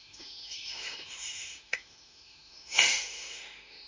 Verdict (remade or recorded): remade